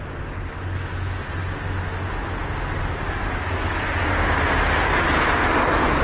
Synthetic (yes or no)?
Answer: no